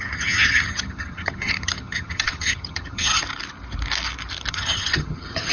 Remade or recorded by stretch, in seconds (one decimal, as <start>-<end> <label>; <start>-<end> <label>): 0.0-3.1 remade; 3.1-4.5 recorded; 4.5-5.5 remade